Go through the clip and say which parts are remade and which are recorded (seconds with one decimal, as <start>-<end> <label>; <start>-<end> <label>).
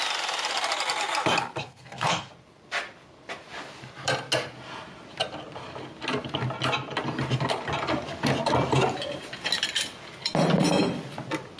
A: 0.0-1.6 recorded; 1.6-2.3 remade; 2.3-11.6 recorded